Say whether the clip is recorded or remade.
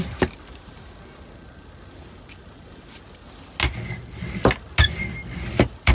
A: recorded